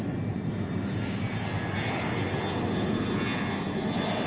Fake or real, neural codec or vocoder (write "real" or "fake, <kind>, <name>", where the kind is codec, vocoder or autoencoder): real